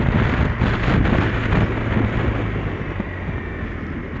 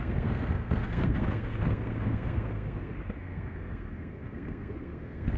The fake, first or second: second